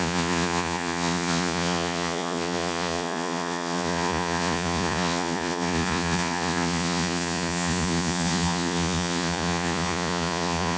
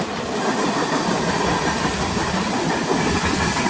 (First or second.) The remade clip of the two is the first